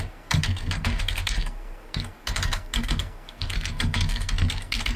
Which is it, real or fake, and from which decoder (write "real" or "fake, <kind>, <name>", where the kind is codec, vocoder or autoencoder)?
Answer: fake, codec, SNAC